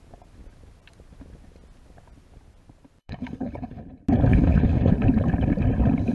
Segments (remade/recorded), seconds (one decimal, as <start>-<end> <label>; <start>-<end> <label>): 0.0-3.0 recorded; 3.0-3.8 remade; 3.8-4.3 recorded; 4.3-4.9 remade; 4.9-6.1 recorded